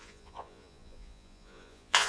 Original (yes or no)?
no